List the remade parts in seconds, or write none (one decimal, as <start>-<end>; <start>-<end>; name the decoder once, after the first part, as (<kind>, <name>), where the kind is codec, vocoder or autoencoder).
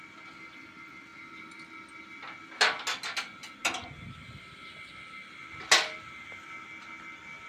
none